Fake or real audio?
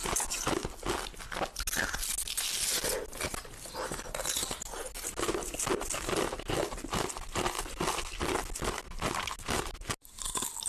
real